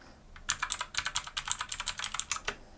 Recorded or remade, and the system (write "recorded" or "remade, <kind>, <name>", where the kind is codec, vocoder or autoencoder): recorded